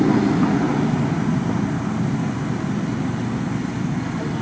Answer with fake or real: real